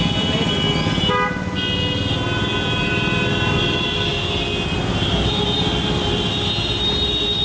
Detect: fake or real real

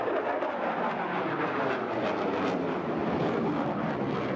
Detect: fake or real real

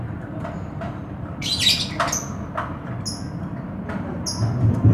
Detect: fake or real real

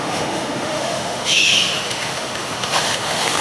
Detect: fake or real fake